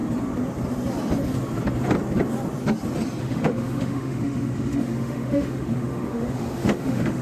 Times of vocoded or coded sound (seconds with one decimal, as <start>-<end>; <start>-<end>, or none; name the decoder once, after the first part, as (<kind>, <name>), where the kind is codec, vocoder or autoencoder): 3.2-7.2 (autoencoder, DAC-VAE)